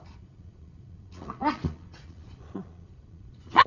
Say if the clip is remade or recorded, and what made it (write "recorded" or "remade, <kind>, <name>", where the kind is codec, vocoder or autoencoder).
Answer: remade, vocoder, Vocos